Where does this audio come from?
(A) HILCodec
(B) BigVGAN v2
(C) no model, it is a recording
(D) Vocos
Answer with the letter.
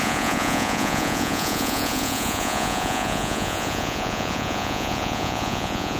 D